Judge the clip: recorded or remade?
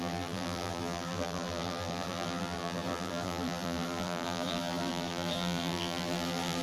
remade